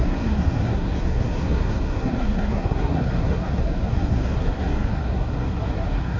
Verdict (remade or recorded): remade